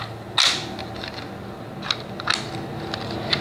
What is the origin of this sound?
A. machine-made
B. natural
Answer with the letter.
B